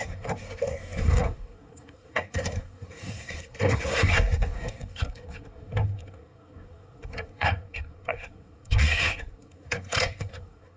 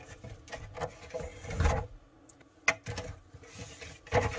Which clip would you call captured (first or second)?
second